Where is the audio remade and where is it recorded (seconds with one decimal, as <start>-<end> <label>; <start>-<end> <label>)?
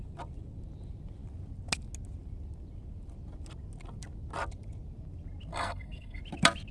0.0-5.5 recorded; 5.5-6.2 remade; 6.2-6.7 recorded